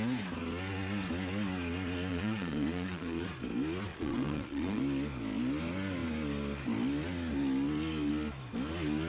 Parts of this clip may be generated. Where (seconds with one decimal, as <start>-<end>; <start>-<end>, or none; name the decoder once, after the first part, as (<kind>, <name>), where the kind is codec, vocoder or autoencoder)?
2.1-3.2 (vocoder, Vocos); 3.9-4.8